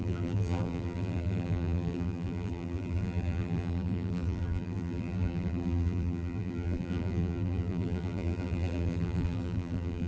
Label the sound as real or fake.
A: fake